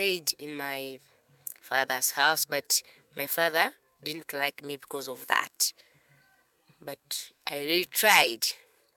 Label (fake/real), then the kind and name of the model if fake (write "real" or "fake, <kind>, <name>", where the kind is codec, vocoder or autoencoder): fake, codec, SNAC